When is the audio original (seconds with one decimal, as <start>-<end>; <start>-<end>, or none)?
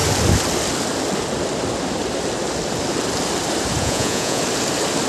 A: 0.0-3.8; 4.4-5.1